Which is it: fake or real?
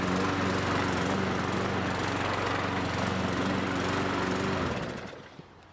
real